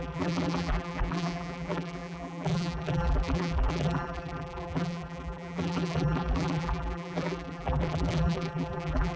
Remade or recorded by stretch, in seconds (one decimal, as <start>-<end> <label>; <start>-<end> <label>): 0.0-9.2 remade

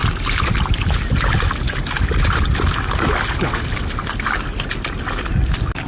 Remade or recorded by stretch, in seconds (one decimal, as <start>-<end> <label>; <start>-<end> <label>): 0.0-5.9 recorded

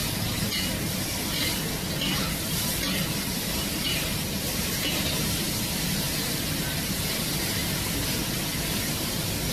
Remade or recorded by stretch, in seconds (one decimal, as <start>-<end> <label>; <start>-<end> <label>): 0.0-3.8 recorded; 3.8-7.6 remade; 7.6-9.5 recorded